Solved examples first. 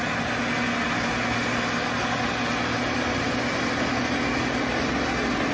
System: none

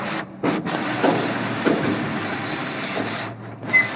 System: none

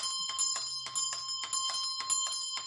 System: none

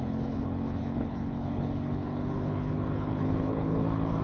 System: codec, HILCodec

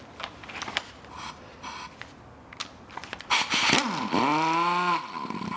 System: none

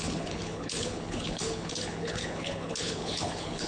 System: codec, HILCodec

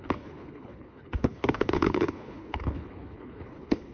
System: codec, HILCodec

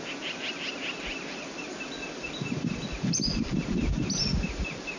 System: none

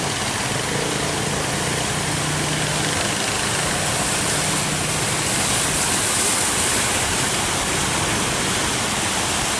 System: none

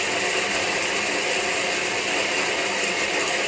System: none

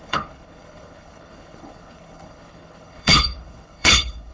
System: codec, HILCodec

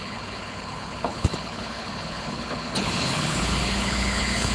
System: codec, HILCodec